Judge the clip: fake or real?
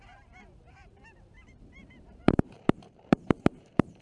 fake